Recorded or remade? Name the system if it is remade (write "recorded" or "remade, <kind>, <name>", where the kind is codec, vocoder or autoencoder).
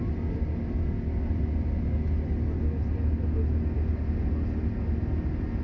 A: recorded